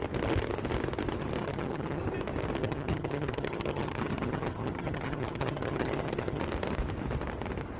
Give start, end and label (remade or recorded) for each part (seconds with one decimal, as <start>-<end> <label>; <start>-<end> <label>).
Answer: 0.0-1.4 recorded; 1.4-2.0 remade; 2.0-2.6 recorded; 2.6-6.4 remade; 6.4-7.8 recorded